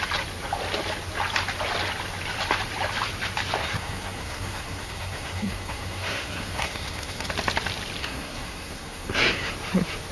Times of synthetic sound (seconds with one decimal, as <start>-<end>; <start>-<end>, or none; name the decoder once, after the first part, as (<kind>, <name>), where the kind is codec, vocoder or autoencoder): 3.6-7.3 (codec, SNAC); 8.0-9.5